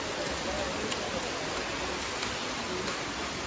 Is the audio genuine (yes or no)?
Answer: yes